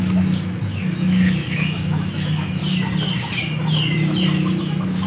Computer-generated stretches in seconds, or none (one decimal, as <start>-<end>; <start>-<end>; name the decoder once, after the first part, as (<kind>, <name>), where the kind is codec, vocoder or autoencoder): 0.0-2.6 (autoencoder, DAC-VAE); 4.6-5.1